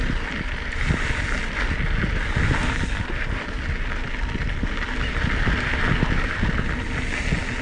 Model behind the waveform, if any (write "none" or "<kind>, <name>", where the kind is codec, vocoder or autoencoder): none